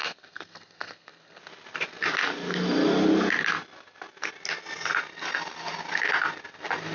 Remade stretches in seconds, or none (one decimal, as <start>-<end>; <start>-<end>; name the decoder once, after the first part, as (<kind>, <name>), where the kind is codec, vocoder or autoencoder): 0.0-1.4 (codec, SNAC)